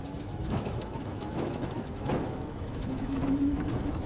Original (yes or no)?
no